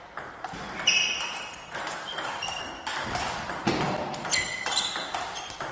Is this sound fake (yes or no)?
no